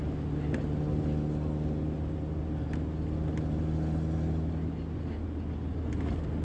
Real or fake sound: real